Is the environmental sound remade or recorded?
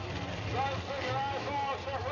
recorded